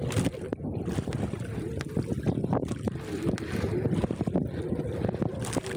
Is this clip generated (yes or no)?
no